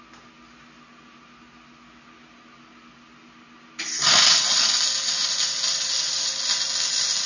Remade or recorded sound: recorded